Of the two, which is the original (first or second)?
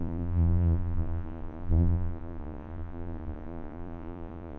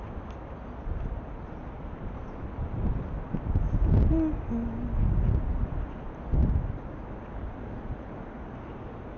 second